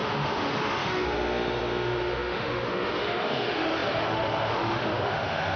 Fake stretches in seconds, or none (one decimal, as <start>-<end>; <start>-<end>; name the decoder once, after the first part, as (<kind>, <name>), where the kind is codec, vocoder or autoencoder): 0.0-5.6 (autoencoder, DAC-VAE)